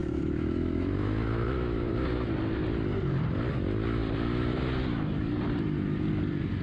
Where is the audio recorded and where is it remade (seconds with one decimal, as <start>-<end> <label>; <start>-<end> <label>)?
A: 0.0-1.9 remade; 1.9-6.6 recorded